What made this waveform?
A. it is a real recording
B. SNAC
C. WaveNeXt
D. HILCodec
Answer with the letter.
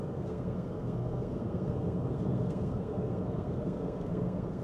B